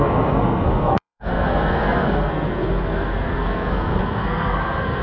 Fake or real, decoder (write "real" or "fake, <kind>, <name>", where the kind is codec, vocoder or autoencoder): fake, codec, SNAC